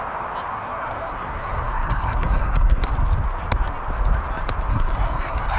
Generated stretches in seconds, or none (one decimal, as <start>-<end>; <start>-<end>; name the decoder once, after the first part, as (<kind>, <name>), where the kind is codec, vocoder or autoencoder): 0.5-2.9 (codec, SNAC); 4.7-5.6